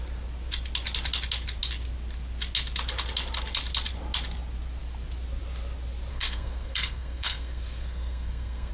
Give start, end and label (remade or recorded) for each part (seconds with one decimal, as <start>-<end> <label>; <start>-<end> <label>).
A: 0.0-6.1 recorded; 6.1-8.7 remade